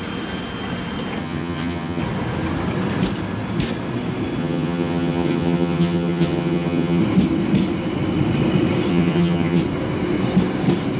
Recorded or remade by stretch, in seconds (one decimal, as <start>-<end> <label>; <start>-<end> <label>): 0.0-1.2 recorded; 1.2-2.0 remade; 2.0-4.4 recorded; 4.4-7.0 remade; 7.0-8.9 recorded; 8.9-9.6 remade; 9.6-11.0 recorded